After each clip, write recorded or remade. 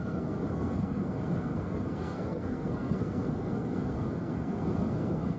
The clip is remade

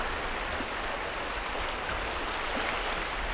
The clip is recorded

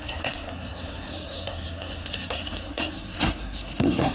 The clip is remade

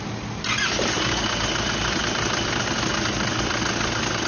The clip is recorded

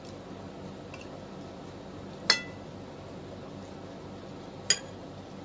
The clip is recorded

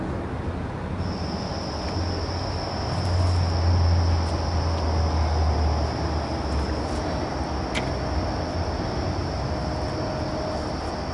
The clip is recorded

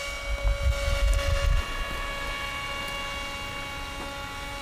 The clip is recorded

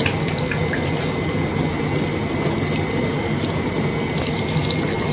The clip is recorded